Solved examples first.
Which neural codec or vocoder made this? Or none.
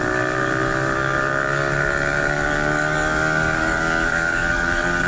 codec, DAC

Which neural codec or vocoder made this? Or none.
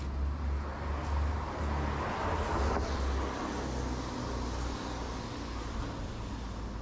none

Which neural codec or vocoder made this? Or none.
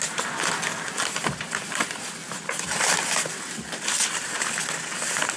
none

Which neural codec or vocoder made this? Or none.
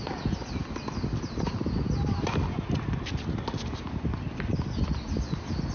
none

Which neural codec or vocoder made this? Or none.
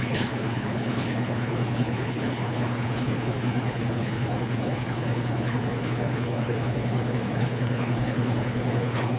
codec, HILCodec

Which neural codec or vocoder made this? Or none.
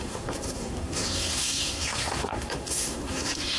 codec, SNAC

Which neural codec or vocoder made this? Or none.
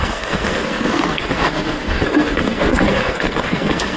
codec, SNAC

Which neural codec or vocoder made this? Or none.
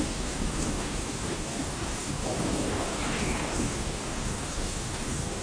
codec, DAC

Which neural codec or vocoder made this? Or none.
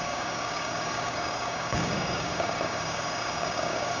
codec, DAC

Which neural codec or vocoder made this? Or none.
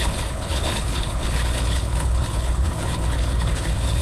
codec, HILCodec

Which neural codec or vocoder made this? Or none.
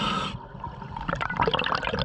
none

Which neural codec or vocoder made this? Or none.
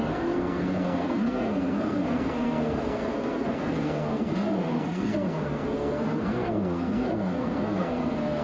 codec, SNAC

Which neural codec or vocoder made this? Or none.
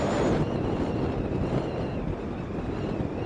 none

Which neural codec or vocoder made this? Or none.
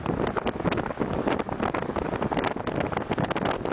none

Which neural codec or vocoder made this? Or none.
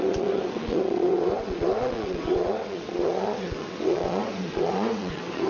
vocoder, WaveNeXt